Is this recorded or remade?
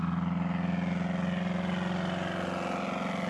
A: recorded